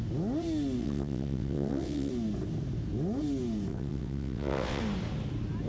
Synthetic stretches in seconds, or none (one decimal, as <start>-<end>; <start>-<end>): 0.8-2.1; 3.7-4.8